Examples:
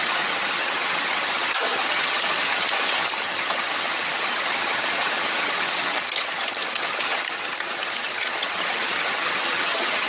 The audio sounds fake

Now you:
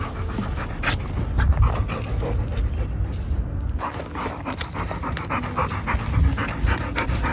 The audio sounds real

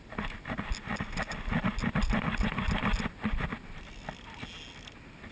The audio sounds real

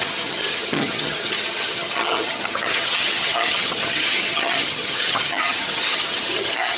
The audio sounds fake